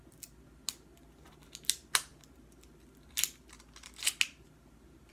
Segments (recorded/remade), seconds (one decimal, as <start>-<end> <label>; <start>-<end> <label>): 0.0-5.1 recorded